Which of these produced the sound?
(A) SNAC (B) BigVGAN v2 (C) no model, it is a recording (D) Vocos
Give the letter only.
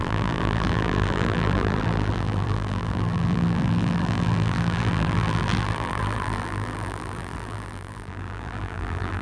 B